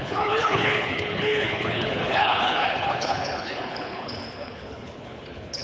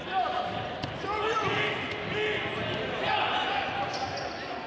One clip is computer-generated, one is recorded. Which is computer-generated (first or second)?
first